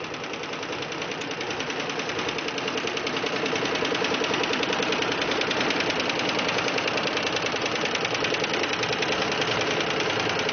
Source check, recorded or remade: recorded